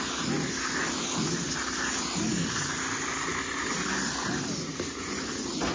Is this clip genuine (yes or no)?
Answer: yes